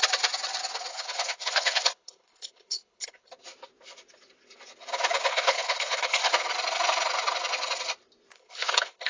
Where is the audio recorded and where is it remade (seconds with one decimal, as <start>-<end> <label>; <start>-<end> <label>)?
0.0-0.9 recorded; 0.9-3.3 remade; 3.3-5.3 recorded; 5.3-6.3 remade; 6.3-8.3 recorded; 8.3-9.1 remade